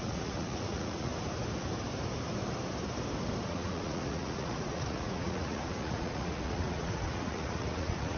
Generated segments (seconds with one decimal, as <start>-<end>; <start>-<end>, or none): 0.0-1.1; 3.5-8.2